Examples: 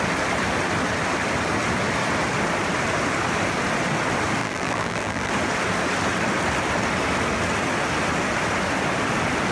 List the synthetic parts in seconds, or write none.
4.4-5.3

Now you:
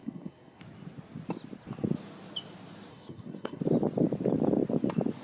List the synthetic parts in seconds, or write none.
0.0-0.6; 2.9-3.6

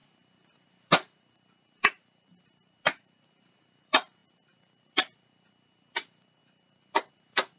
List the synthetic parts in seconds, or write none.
0.0-7.6

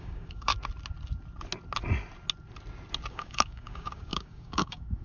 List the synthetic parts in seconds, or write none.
0.0-0.5; 3.1-5.0

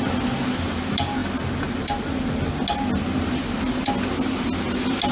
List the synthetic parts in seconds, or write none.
none